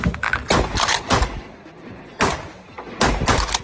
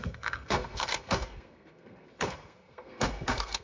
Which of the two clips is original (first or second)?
first